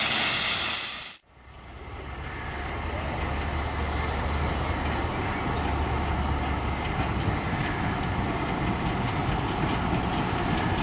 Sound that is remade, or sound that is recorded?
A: recorded